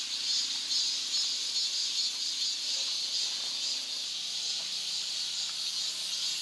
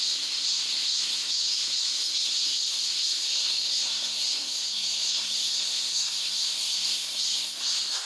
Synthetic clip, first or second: second